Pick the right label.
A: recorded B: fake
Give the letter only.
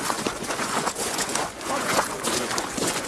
B